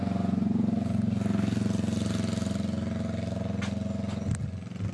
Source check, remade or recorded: recorded